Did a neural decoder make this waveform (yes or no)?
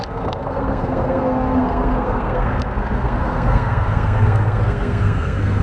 yes